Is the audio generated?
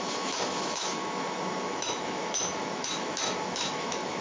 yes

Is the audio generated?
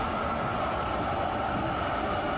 no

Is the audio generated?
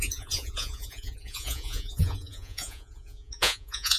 yes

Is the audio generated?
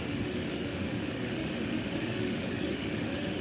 yes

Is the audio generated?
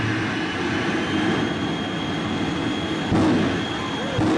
no